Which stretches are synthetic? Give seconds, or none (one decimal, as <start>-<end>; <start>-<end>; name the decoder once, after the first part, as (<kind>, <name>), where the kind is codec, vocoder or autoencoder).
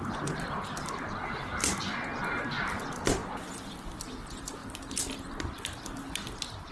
none